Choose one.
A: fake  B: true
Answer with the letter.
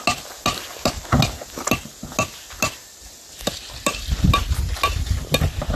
B